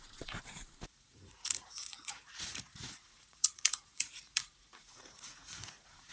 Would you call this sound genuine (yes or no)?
no